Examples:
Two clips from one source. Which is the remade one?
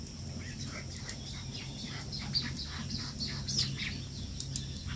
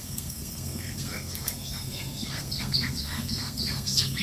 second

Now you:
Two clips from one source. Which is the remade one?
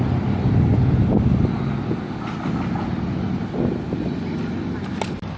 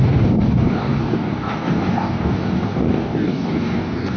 second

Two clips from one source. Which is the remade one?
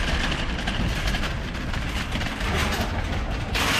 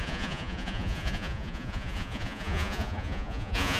second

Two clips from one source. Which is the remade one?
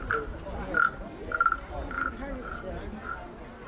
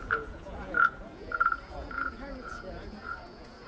second